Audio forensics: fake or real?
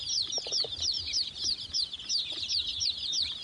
fake